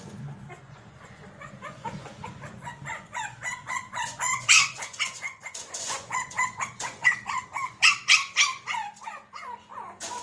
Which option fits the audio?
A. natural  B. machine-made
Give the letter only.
B